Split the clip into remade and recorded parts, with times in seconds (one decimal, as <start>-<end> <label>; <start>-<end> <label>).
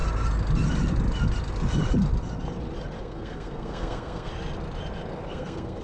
0.0-3.0 recorded; 3.0-4.3 remade; 4.3-5.3 recorded; 5.3-5.8 remade